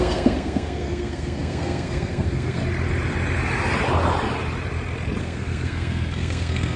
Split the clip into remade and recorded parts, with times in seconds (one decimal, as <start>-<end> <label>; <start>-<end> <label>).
0.0-2.6 remade; 2.6-5.2 recorded; 5.2-6.8 remade